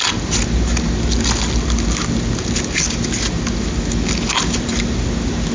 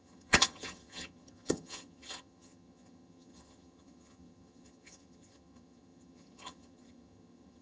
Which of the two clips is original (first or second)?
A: first